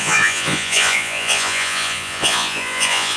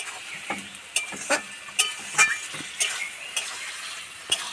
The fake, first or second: first